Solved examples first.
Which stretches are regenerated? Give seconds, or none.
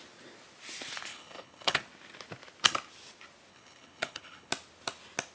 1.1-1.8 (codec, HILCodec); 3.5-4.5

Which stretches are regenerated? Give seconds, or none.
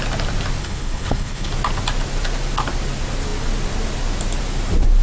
0.6-1.5 (codec, HILCodec)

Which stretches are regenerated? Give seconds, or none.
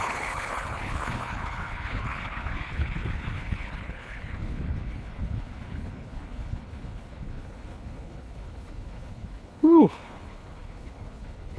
0.0-11.6 (codec, HILCodec)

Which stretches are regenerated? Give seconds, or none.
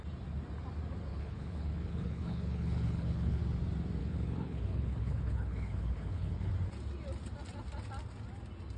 1.1-3.4 (codec, HILCodec); 4.0-6.5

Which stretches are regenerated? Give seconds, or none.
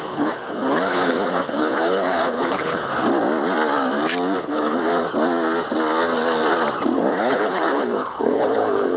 0.0-2.9 (codec, HILCodec); 4.4-4.9; 7.1-9.0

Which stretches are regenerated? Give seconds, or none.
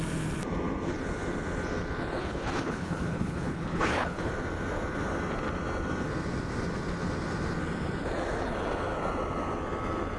2.2-4.3 (codec, HILCodec)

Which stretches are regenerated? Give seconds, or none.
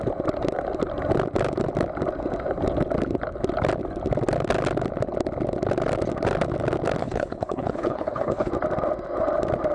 7.0-8.5 (codec, HILCodec)